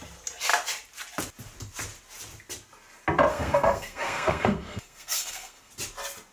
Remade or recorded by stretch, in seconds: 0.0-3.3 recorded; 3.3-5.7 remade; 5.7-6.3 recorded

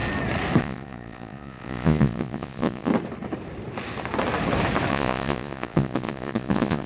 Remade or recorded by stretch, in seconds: 0.0-0.6 recorded; 0.6-2.9 remade; 2.9-4.9 recorded; 4.9-6.9 remade

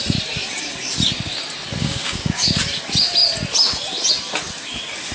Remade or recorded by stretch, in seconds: 0.0-1.8 recorded; 1.8-2.5 remade; 2.5-5.1 recorded

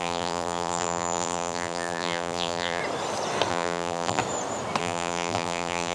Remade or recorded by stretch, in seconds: 0.0-2.8 remade; 2.8-3.5 recorded; 3.5-4.2 remade; 4.2-4.8 recorded; 4.8-5.9 remade

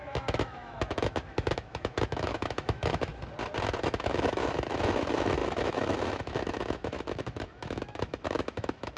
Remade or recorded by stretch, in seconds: 0.0-3.1 remade; 3.1-3.8 recorded; 3.8-9.0 remade

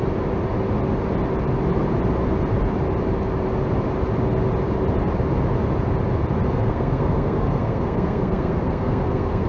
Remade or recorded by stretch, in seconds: 0.0-6.5 recorded; 6.5-9.5 remade

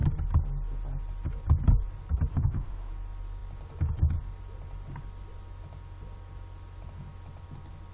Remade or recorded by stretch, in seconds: 0.0-2.3 recorded; 2.3-2.9 remade; 2.9-7.9 recorded

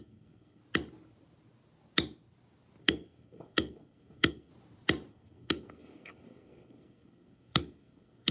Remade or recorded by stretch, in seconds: 0.0-0.6 remade; 0.6-2.8 recorded; 2.8-4.5 remade; 4.5-5.1 recorded; 5.1-8.3 remade